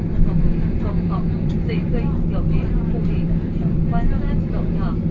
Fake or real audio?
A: fake